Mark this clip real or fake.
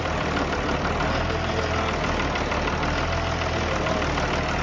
real